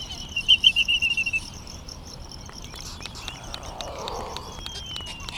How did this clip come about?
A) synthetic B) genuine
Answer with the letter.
A